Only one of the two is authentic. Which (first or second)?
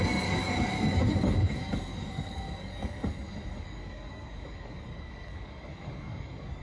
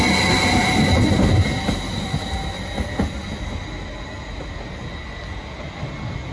second